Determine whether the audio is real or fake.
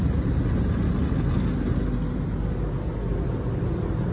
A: real